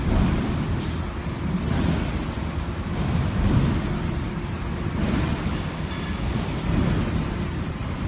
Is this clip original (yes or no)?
yes